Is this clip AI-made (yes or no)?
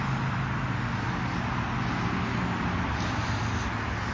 no